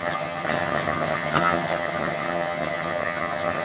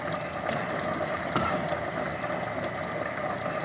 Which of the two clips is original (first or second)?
second